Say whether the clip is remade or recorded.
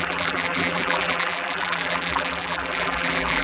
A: remade